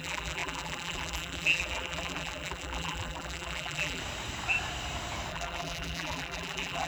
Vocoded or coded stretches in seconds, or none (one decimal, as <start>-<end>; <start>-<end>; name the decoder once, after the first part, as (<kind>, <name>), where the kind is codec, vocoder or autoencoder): 0.0-4.0 (vocoder, BigVGAN v2); 5.3-6.9